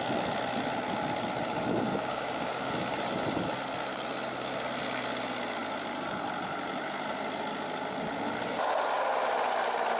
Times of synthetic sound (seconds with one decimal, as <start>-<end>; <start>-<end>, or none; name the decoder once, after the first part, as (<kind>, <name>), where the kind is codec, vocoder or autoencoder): 1.9-2.7 (codec, DAC)